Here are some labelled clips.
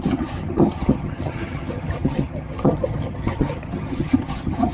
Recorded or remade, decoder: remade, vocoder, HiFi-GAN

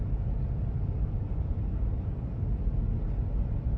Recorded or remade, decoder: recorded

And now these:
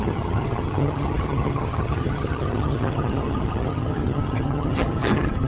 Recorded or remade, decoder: remade, vocoder, HiFi-GAN